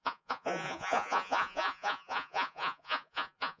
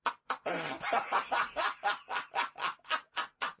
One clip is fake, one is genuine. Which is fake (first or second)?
first